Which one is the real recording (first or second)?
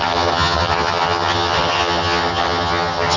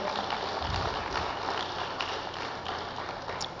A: second